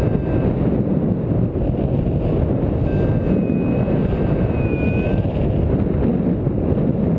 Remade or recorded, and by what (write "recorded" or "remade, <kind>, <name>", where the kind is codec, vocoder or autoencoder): recorded